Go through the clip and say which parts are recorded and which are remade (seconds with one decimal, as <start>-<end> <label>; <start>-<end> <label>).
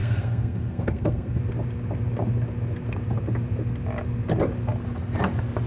0.0-1.4 remade; 1.4-5.7 recorded